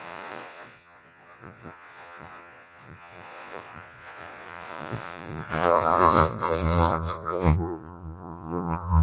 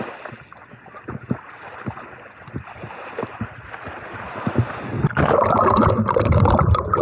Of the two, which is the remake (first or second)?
first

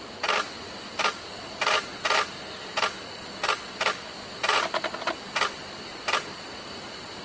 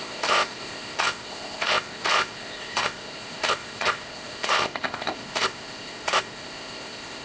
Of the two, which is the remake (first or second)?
second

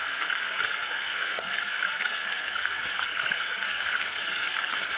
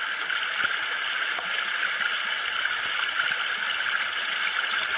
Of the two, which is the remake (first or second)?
first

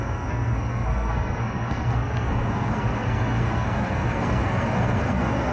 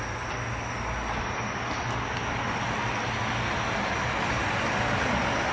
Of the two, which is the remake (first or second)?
first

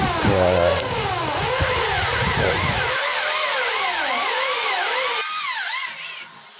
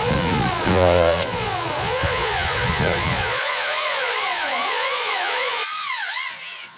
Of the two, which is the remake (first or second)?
second